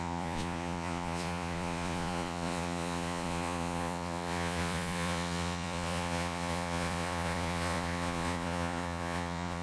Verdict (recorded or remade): remade